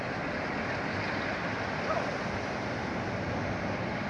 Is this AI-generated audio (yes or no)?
no